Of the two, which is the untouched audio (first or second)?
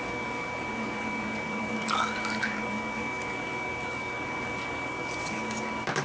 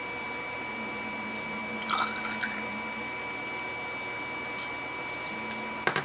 second